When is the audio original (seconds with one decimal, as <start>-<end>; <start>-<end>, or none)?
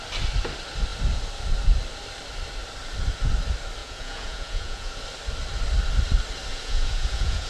0.0-3.8; 5.0-6.5